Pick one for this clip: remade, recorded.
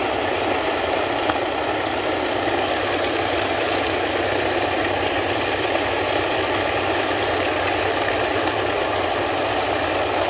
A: remade